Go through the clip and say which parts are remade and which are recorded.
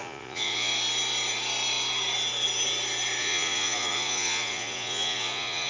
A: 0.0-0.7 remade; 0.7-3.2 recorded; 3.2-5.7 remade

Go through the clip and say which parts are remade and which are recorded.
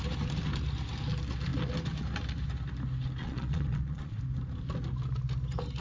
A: 0.0-3.2 recorded; 3.2-4.2 remade; 4.2-5.8 recorded